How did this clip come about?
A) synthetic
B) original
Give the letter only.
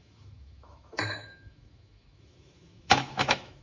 A